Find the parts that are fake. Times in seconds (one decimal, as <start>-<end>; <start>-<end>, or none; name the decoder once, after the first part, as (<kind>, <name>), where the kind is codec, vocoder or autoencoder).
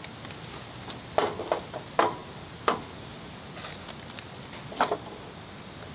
none